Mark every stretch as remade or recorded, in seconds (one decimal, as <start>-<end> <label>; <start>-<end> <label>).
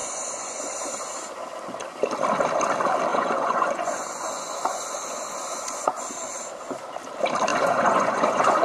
0.0-0.6 remade; 0.6-3.1 recorded; 3.1-6.0 remade; 6.0-7.5 recorded; 7.5-8.6 remade